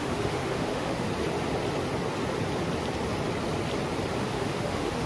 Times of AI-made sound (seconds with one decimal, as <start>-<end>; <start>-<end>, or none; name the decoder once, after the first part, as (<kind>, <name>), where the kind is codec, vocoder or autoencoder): 0.0-1.1 (autoencoder, DAC-VAE); 4.2-5.1